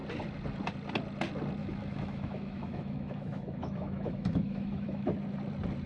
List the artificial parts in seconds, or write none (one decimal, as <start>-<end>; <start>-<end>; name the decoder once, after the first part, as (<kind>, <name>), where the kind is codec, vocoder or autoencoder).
1.6-5.1 (autoencoder, DAC-VAE)